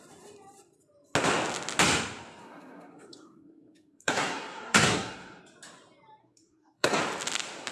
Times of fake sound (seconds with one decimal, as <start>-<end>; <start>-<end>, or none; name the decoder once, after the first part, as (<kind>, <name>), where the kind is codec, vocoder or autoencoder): 2.4-5.4 (codec, SNAC); 6.2-7.0